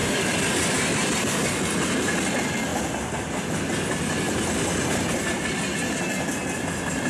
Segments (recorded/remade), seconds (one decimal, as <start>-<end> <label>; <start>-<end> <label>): 0.0-7.1 recorded